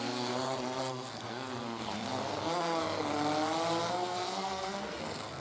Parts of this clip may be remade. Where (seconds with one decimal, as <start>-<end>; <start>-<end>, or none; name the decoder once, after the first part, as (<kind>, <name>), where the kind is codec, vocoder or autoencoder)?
0.0-3.1 (codec, SNAC); 3.8-5.4